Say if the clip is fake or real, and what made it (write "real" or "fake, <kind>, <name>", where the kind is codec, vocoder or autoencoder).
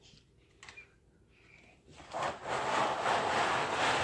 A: real